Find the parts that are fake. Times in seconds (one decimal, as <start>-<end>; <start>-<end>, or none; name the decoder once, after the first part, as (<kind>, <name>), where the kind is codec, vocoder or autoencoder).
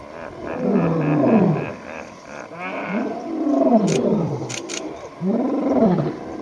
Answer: 0.0-6.4 (vocoder, BigVGAN v2)